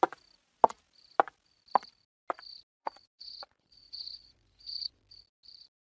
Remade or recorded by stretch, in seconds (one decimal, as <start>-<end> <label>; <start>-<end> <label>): 0.0-2.8 recorded; 2.8-5.0 remade; 5.0-5.9 recorded